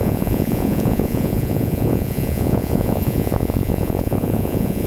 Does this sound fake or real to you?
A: fake